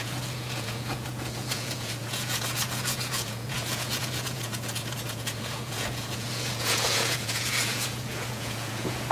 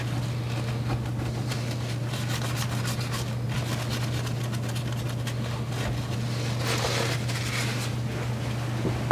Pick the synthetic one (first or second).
first